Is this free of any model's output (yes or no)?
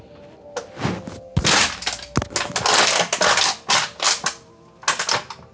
yes